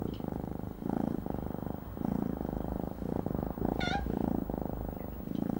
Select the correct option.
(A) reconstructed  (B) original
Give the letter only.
A